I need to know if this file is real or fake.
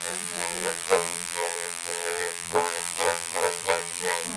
fake